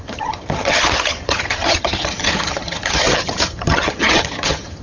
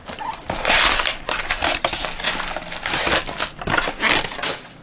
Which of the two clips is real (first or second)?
second